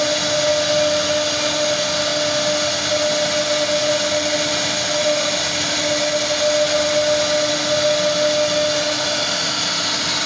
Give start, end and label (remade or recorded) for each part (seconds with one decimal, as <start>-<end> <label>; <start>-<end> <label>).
0.0-10.3 recorded

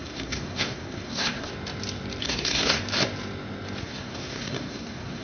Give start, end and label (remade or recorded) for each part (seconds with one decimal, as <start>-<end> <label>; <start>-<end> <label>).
0.0-1.5 remade; 1.5-2.2 recorded; 2.2-2.8 remade; 2.8-3.8 recorded; 3.8-5.2 remade

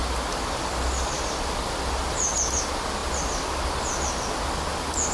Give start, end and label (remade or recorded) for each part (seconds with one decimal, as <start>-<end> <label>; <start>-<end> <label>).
0.0-5.1 recorded

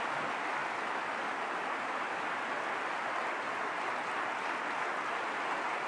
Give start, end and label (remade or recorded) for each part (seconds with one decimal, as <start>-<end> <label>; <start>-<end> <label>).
0.0-5.9 recorded

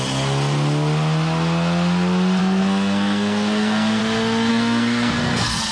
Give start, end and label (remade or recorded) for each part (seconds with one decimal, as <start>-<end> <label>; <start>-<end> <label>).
0.0-2.4 recorded; 2.4-4.0 remade; 4.0-4.5 recorded; 4.5-5.7 remade